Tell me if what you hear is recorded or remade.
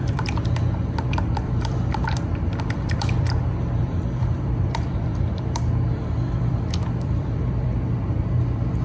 remade